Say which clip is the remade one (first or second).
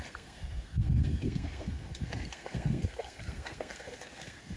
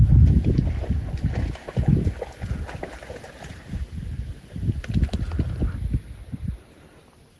first